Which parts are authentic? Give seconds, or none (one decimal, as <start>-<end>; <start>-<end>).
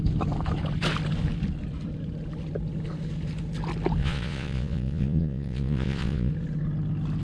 0.0-4.0; 6.3-7.2